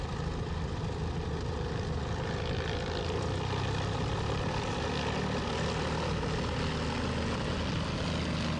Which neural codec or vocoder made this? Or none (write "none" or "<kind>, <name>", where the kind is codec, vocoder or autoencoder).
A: none